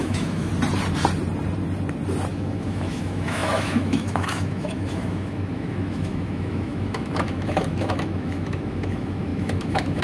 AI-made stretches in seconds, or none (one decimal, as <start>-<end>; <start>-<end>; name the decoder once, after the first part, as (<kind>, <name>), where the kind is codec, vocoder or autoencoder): 0.0-0.5 (autoencoder, DAC-VAE); 2.3-10.0

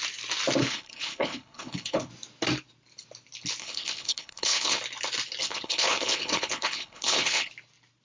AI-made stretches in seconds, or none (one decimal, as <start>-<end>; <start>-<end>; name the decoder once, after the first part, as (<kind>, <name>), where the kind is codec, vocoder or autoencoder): 0.6-2.1 (codec, HILCodec); 3.6-4.8; 5.4-7.5

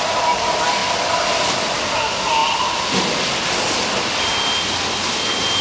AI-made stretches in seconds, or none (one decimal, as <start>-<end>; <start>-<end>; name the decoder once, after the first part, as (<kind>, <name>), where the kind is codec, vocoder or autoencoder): none

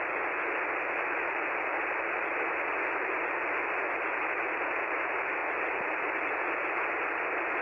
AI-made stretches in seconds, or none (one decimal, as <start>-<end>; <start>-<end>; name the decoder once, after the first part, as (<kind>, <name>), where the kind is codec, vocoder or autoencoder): none

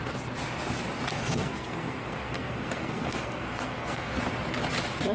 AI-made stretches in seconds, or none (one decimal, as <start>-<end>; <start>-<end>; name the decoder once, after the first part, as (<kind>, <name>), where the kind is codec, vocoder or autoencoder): 1.1-4.2 (codec, SNAC)

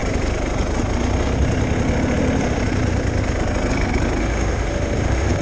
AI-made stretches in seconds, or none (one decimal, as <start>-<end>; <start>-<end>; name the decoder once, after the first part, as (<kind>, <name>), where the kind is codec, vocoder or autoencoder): 4.2-5.4 (autoencoder, DAC-VAE)

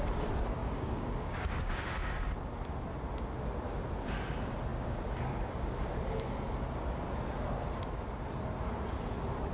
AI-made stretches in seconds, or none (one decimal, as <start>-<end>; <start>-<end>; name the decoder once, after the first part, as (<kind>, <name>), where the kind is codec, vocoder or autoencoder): 0.6-1.8 (codec, DAC); 4.7-5.9

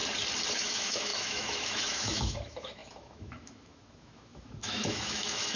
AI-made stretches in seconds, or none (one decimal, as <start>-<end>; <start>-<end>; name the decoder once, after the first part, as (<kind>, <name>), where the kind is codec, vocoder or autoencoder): 0.5-5.6 (autoencoder, DAC-VAE)